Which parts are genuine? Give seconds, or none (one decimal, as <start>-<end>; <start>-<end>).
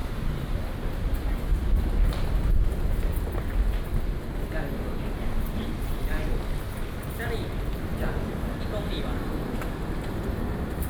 1.5-4.8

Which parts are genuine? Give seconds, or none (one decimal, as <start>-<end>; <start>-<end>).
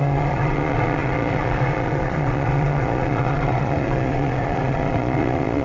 none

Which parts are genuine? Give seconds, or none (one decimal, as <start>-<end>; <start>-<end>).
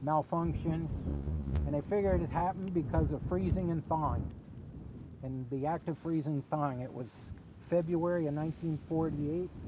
0.0-1.1; 1.7-9.7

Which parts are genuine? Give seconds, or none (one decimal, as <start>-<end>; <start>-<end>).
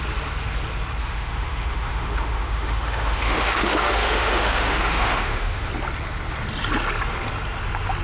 0.0-1.0; 5.7-8.0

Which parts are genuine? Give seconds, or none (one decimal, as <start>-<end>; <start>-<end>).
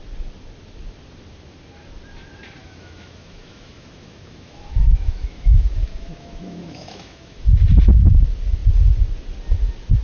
0.0-2.6; 7.5-10.0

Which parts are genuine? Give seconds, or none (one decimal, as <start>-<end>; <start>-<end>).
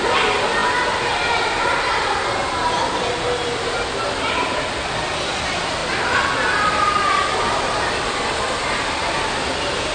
0.0-9.9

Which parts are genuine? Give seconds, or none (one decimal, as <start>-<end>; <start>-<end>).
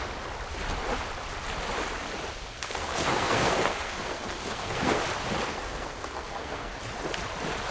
0.0-2.5; 5.0-5.5; 6.8-7.7